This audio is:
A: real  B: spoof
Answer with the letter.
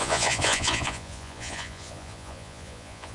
B